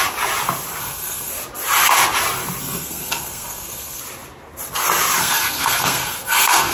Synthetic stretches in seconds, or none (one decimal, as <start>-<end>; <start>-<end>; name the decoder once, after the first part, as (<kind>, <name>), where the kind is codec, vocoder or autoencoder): 0.8-1.3 (codec, SNAC); 2.6-4.0; 5.2-6.7